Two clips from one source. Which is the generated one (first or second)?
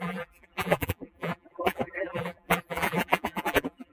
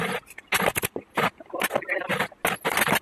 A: first